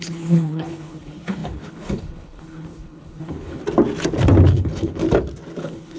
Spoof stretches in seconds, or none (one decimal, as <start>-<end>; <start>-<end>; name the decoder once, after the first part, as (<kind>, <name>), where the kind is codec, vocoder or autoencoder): 0.0-3.6 (codec, HILCodec); 4.5-5.0; 5.6-6.0